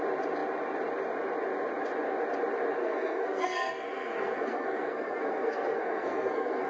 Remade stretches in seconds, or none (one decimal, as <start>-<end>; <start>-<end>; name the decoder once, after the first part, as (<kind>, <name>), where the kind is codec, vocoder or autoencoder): 2.8-6.7 (codec, SNAC)

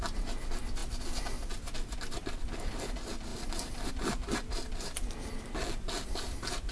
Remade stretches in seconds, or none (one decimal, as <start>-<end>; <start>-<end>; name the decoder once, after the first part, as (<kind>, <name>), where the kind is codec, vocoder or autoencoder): none

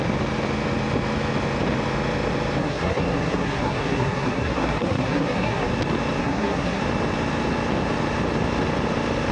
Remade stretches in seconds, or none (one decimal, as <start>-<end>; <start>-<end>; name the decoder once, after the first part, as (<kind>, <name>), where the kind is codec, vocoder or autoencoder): 2.6-5.7 (codec, SNAC); 6.2-6.8

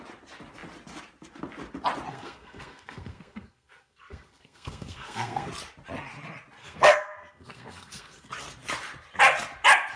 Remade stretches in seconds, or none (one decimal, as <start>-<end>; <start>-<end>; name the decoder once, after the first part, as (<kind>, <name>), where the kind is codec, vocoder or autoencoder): 2.1-5.5 (codec, SNAC); 6.6-8.3

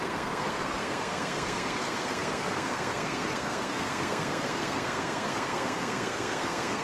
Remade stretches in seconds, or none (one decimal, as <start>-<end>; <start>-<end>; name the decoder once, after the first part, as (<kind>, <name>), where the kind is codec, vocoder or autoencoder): 0.0-6.8 (codec, SNAC)

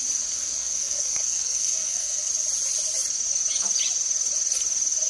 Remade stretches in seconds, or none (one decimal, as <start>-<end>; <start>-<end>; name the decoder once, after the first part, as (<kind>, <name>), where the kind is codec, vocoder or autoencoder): 0.6-2.3 (codec, SNAC)

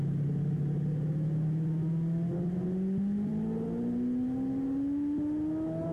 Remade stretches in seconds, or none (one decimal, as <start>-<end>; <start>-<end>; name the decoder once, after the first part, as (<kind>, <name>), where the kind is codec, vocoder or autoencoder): none